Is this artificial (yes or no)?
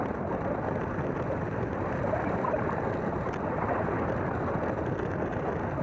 no